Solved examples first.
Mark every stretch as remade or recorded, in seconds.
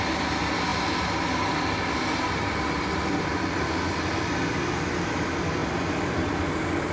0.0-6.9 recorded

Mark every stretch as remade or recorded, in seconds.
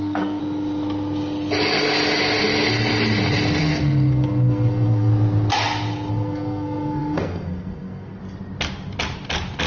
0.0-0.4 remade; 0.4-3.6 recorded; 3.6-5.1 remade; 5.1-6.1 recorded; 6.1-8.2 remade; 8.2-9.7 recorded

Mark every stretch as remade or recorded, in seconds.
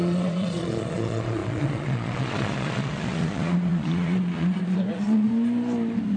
0.0-5.3 remade; 5.3-6.2 recorded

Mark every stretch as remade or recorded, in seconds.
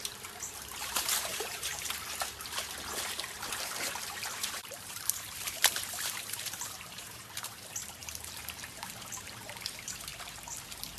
0.0-1.7 remade; 1.7-3.5 recorded; 3.5-11.0 remade